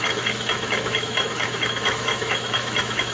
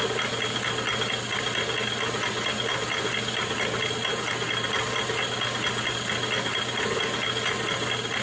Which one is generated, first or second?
first